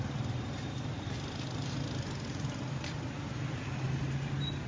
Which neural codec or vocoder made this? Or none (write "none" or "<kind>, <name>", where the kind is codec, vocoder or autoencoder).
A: none